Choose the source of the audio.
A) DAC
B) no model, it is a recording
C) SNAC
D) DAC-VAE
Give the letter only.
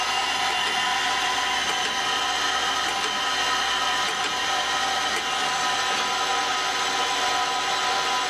B